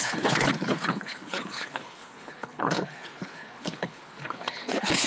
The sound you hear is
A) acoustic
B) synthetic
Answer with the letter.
B